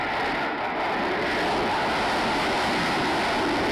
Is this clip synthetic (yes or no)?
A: no